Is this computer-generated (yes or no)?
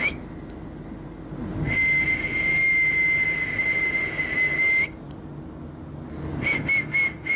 no